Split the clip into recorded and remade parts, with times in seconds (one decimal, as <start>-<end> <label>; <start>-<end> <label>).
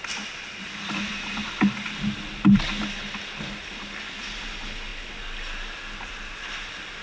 0.0-7.0 recorded